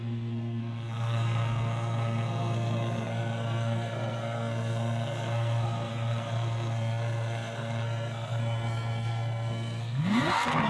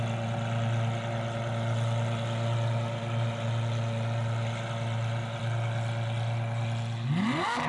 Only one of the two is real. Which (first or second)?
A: second